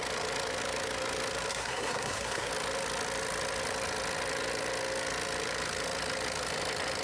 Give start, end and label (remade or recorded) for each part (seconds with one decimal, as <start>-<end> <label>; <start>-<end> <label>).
0.0-1.5 recorded; 1.5-2.5 remade; 2.5-7.0 recorded